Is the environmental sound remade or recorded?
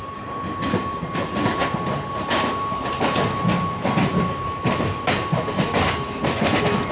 recorded